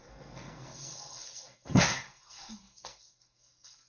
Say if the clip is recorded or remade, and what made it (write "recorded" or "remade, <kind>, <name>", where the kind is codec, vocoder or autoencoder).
remade, codec, SNAC